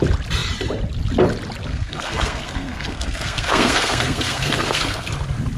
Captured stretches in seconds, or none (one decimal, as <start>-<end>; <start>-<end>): 0.0-1.7; 5.1-5.6

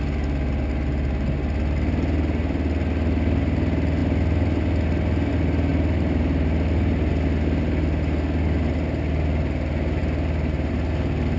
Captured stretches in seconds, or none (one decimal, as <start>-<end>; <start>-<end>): 0.0-11.4

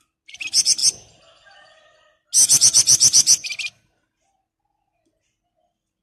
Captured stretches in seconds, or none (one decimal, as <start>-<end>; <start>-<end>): 0.0-6.0

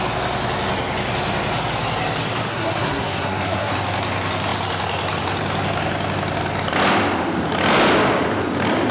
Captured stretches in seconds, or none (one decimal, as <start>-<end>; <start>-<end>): 0.0-2.5; 3.7-8.9

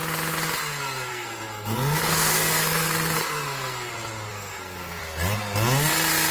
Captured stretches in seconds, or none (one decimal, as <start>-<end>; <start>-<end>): 0.0-1.1; 3.9-4.3; 5.0-6.3